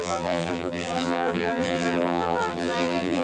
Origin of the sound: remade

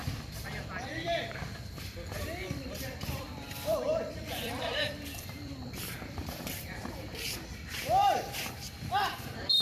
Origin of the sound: remade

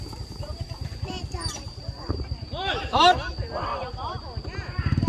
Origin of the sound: remade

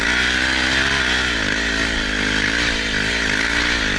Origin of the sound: recorded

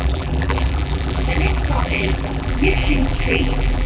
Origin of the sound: remade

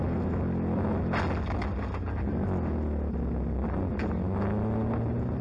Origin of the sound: recorded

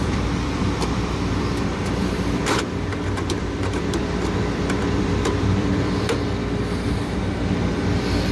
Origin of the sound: remade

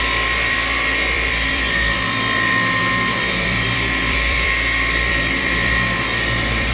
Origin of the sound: remade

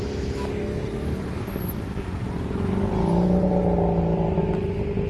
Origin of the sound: recorded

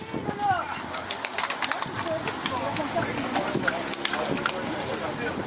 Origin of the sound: recorded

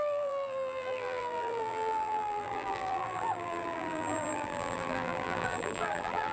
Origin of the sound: remade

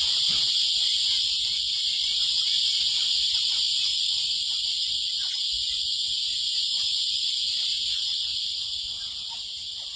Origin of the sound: recorded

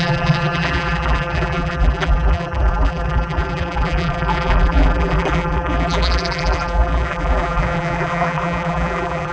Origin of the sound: remade